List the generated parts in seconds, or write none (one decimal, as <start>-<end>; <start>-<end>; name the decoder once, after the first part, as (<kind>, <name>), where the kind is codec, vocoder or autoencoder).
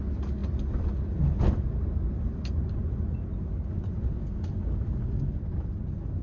none